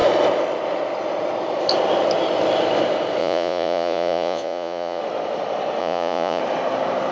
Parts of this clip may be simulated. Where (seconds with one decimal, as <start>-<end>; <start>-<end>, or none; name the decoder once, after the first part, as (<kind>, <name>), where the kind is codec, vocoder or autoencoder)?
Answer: 3.2-5.0 (vocoder, Vocos); 5.8-6.4